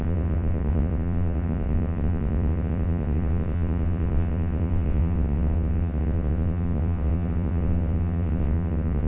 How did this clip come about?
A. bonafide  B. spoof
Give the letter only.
B